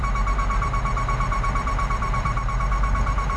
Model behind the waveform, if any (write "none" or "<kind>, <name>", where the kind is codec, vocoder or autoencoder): vocoder, BigVGAN v2